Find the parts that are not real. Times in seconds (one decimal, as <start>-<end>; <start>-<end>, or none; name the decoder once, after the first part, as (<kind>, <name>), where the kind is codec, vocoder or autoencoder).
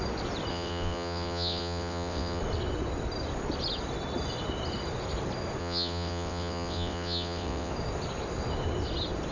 0.5-2.4 (vocoder, WaveNeXt); 5.6-7.7